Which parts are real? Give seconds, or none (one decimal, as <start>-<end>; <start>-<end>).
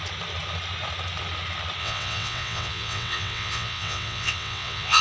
0.0-1.8